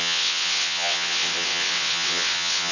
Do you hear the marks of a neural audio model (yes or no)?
yes